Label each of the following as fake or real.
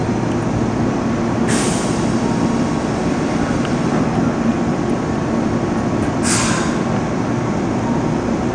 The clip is real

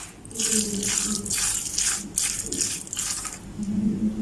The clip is real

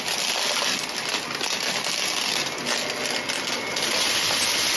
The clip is real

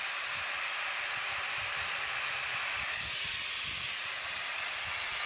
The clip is fake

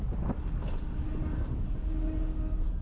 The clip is real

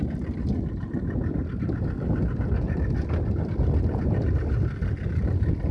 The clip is real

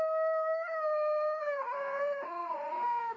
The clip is fake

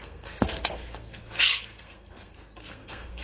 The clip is fake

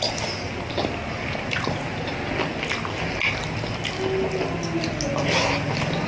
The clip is real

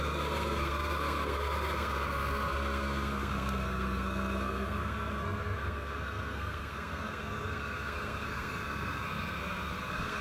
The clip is fake